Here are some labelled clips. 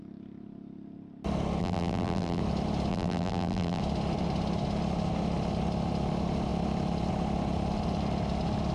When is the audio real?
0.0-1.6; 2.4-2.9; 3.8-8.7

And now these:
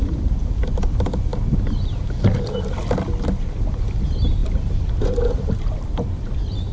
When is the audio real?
0.0-6.7